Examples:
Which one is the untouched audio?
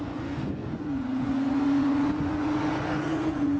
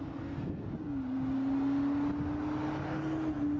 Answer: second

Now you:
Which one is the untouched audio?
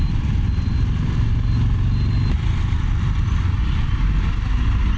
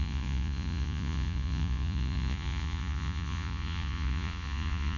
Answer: first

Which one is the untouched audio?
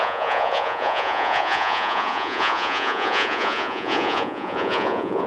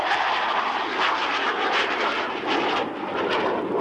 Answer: second